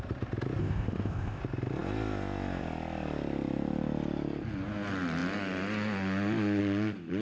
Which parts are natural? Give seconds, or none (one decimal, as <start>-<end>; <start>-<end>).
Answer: 0.0-0.6; 1.4-7.2